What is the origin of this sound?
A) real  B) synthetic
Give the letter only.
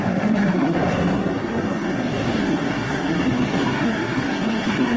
B